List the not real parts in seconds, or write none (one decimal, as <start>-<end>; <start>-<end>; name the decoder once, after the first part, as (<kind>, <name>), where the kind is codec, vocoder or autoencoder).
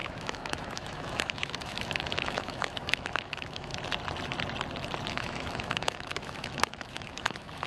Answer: 0.0-3.7 (autoencoder, DAC-VAE); 5.1-7.7